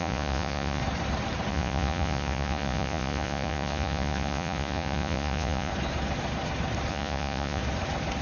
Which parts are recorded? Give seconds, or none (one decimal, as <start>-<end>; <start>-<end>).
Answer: 0.8-1.5; 5.7-6.9; 7.6-8.2